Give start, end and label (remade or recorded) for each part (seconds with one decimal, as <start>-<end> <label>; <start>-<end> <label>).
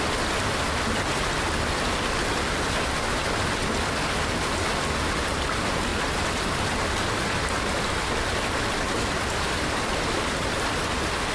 0.0-11.3 recorded